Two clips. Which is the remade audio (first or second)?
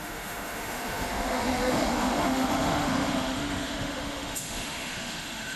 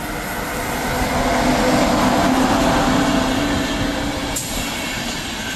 first